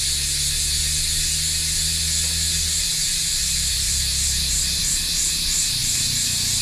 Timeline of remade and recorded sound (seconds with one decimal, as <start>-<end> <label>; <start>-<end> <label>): 0.0-3.2 recorded; 3.2-4.6 remade; 4.6-5.8 recorded; 5.8-6.6 remade